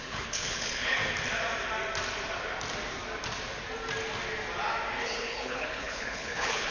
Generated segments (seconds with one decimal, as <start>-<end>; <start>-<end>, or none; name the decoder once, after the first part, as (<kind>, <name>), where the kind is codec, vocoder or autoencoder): 0.0-1.0 (codec, HILCodec); 5.0-6.7